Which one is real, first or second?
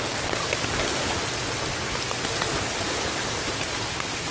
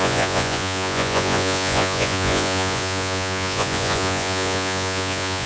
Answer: first